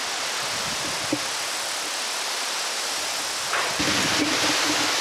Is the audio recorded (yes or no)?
yes